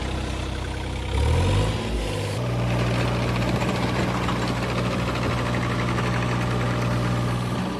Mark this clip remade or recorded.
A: recorded